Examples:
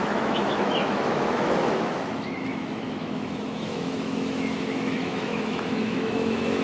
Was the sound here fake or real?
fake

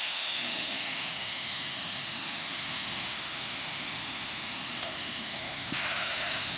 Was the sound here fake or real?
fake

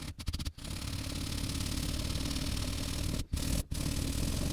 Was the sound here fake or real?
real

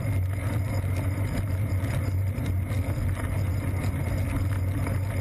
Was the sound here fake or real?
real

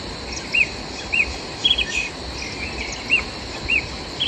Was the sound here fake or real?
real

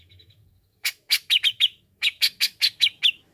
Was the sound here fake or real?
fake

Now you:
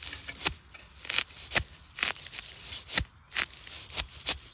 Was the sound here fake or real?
real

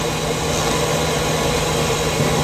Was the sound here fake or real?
real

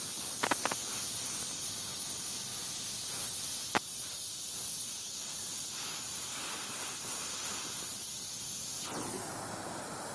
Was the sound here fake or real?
real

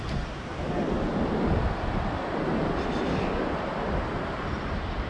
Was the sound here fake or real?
real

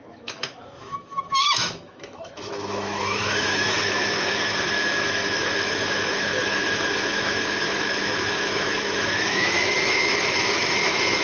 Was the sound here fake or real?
fake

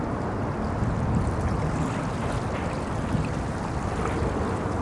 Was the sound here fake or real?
real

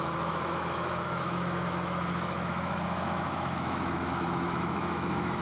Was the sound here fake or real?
fake